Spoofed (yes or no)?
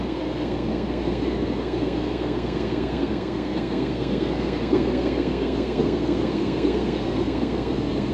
yes